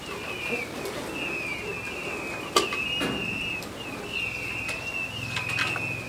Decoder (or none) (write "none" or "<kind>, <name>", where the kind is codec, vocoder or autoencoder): none